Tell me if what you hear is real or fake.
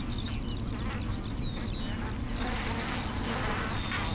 real